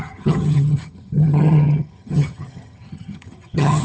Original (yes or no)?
no